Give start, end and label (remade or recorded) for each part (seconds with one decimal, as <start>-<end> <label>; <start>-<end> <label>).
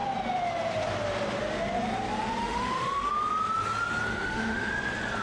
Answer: 0.0-2.4 recorded; 2.4-3.1 remade; 3.1-4.1 recorded; 4.1-4.7 remade; 4.7-5.2 recorded